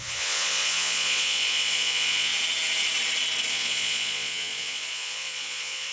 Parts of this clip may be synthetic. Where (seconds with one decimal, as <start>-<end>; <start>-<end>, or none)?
0.0-2.3; 3.5-5.9